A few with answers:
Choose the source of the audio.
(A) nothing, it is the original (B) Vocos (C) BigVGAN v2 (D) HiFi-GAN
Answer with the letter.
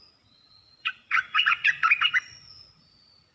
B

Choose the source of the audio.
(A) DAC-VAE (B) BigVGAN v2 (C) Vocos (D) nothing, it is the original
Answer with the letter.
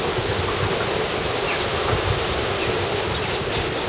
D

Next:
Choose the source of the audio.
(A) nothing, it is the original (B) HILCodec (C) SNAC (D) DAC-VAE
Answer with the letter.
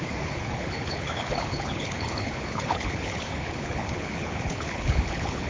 B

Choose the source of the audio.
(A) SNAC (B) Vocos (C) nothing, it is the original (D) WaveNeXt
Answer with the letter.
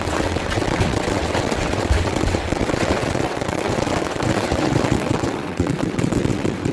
D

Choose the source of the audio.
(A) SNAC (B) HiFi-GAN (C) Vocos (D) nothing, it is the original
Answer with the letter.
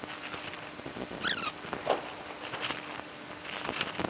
D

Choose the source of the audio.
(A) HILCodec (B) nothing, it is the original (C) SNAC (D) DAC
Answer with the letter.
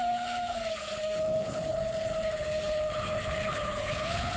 A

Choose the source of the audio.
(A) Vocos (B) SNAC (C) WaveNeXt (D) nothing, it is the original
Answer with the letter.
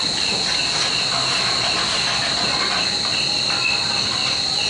D